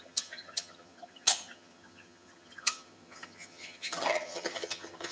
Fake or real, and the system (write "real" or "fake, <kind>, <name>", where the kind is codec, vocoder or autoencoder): fake, vocoder, HiFi-GAN